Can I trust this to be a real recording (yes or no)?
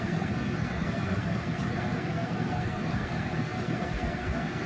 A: no